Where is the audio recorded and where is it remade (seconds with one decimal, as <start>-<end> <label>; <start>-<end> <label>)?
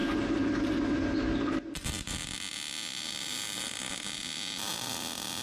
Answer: 0.0-1.5 recorded; 1.5-2.2 remade; 2.2-5.4 recorded